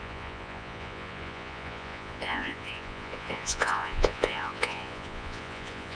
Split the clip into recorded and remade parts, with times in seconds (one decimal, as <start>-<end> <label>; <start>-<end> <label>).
0.0-5.9 remade